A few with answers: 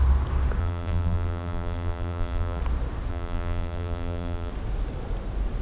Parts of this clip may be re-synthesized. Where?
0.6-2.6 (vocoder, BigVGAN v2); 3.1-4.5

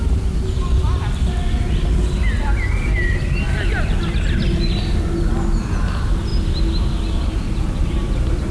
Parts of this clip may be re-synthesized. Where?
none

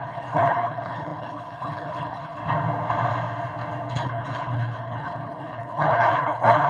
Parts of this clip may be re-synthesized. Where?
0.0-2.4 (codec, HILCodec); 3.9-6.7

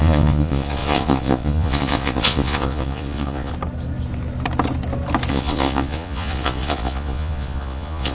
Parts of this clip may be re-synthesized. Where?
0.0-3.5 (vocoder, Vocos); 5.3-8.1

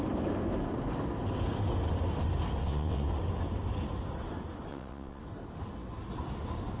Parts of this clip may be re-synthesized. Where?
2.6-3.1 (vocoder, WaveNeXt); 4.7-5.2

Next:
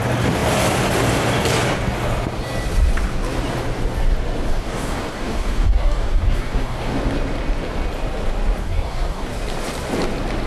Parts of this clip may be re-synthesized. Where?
4.5-6.9 (codec, DAC); 8.6-9.3

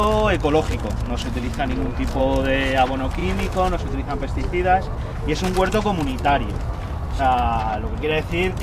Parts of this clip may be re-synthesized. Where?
none

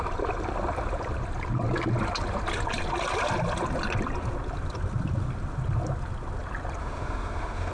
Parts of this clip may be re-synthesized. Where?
6.8-7.7 (autoencoder, DAC-VAE)